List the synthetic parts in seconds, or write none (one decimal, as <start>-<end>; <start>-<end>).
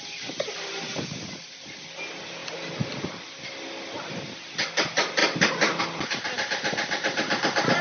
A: none